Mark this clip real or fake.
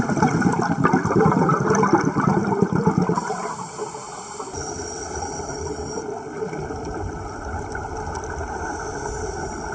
real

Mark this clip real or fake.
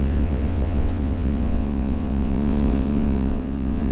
fake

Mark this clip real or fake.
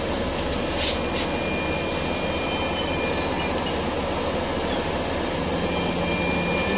real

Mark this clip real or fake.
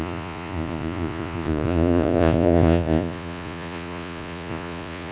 fake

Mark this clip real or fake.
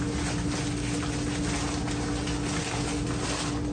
real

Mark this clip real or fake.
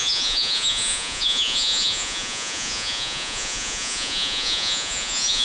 fake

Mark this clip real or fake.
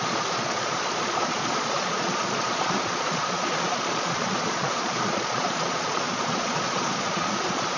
fake